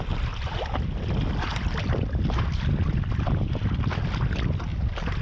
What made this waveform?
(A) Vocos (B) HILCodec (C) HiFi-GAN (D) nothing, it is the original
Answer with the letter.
D